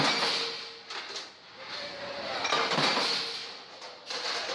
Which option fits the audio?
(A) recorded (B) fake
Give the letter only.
A